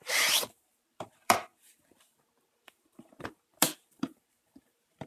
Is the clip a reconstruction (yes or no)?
yes